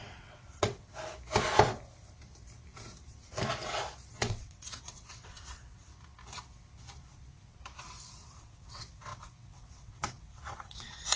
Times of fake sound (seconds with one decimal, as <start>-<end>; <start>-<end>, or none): 0.0-0.9; 4.1-5.9; 7.8-11.2